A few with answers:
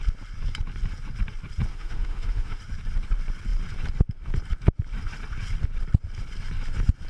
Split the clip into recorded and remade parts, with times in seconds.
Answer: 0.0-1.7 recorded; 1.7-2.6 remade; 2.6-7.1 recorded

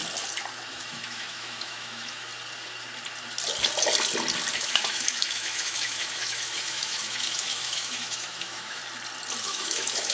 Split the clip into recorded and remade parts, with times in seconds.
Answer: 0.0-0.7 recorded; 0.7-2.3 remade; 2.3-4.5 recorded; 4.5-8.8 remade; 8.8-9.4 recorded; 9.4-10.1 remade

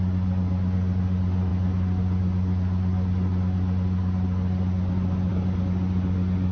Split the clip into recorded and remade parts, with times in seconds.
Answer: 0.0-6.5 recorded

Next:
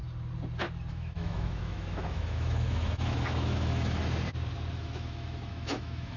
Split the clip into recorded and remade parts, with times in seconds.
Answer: 0.0-0.9 recorded; 0.9-4.0 remade; 4.0-4.7 recorded; 4.7-6.2 remade

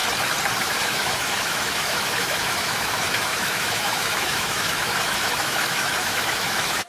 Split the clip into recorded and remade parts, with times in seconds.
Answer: 0.0-0.6 recorded; 0.6-6.9 remade

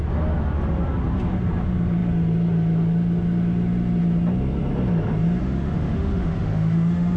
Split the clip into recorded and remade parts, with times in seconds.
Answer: 0.0-5.4 recorded; 5.4-7.2 remade

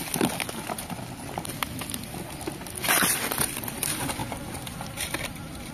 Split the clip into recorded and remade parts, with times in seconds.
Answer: 0.0-5.7 recorded